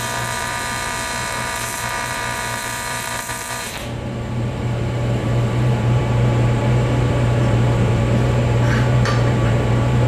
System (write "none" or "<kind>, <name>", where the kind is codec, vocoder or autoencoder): vocoder, BigVGAN v2